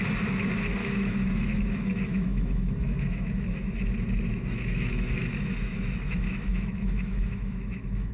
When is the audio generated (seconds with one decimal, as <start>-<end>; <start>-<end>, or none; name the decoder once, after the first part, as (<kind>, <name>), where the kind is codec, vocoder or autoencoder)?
0.8-3.7 (autoencoder, DAC-VAE); 4.3-8.1